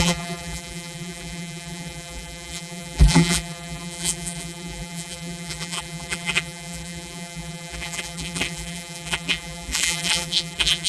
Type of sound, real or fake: fake